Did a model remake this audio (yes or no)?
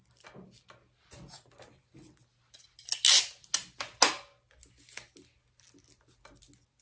no